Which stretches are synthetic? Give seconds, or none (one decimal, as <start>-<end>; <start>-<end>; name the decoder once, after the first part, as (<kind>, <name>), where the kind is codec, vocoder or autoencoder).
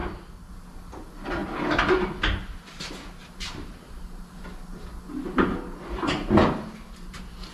none